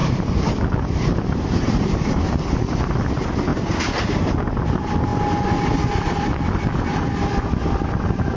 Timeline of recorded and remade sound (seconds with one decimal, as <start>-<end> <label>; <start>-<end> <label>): 0.0-2.2 remade; 2.2-3.5 recorded; 3.5-4.3 remade; 4.3-8.4 recorded

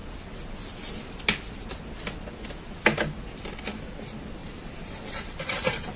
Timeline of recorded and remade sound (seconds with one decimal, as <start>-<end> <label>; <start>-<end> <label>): 0.0-4.4 recorded; 4.4-6.0 remade

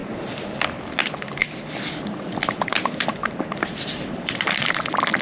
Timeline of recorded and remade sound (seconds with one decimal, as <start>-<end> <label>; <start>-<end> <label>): 0.0-3.1 recorded; 3.1-4.8 remade; 4.8-5.2 recorded